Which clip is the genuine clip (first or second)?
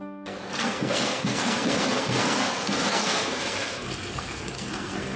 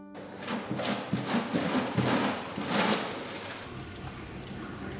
second